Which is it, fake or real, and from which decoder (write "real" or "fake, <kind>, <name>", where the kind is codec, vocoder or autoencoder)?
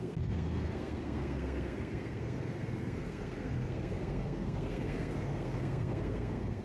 fake, codec, SNAC